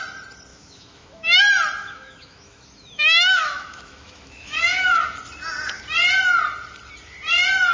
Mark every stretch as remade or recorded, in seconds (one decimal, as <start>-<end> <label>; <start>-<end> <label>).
0.0-0.5 recorded; 0.5-1.4 remade; 1.4-1.8 recorded; 1.8-5.0 remade; 5.0-7.7 recorded